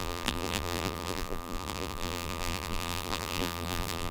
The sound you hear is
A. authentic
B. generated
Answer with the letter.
B